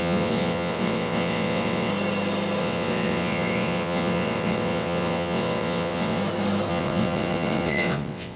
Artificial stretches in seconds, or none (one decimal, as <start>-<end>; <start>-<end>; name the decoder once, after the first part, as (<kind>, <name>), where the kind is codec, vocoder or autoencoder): 0.0-1.9 (vocoder, WaveNeXt); 2.6-6.2; 6.7-8.4